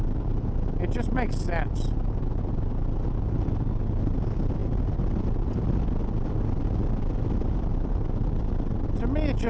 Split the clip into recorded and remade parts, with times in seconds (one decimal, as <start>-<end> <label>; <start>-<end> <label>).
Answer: 0.0-9.5 recorded